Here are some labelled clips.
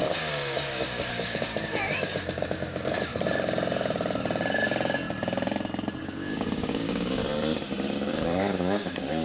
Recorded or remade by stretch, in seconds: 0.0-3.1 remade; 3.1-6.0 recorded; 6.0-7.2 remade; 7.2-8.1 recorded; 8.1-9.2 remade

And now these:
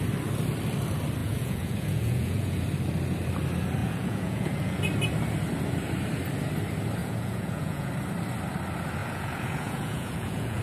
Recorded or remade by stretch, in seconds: 0.0-1.2 recorded; 1.2-2.6 remade; 2.6-3.8 recorded; 3.8-4.8 remade; 4.8-7.0 recorded; 7.0-7.9 remade; 7.9-9.0 recorded; 9.0-10.6 remade

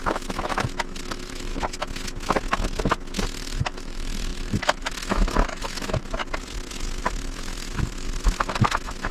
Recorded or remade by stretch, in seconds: 0.0-1.5 remade; 1.5-3.2 recorded; 3.2-6.2 remade; 6.2-7.0 recorded; 7.0-9.1 remade

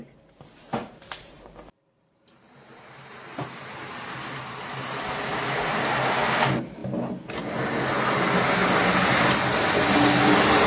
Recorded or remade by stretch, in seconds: 0.0-0.8 recorded; 0.8-4.1 remade; 4.1-10.7 recorded

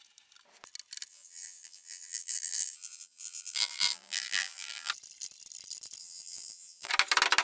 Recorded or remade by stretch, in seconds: 0.0-1.1 recorded; 1.1-4.9 remade; 4.9-6.0 recorded; 6.0-6.9 remade; 6.9-7.4 recorded

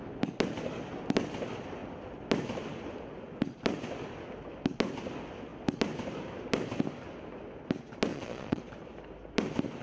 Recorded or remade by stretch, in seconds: 0.0-8.1 recorded; 8.1-8.6 remade; 8.6-9.8 recorded